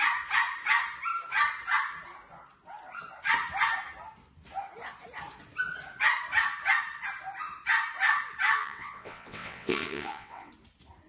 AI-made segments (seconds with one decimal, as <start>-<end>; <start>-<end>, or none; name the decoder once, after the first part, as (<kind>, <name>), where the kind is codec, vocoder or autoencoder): 8.6-10.5 (vocoder, WaveNeXt)